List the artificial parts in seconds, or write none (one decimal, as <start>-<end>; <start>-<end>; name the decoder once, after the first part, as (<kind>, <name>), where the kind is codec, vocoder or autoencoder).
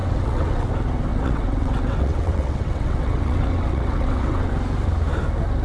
0.0-0.7 (vocoder, WaveNeXt); 1.1-4.5